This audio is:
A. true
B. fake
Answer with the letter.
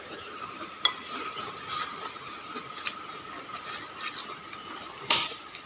A